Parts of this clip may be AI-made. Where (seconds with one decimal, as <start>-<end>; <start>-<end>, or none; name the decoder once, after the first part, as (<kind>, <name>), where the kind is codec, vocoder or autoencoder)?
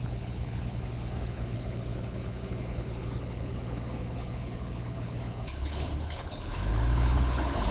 0.0-7.7 (codec, HILCodec)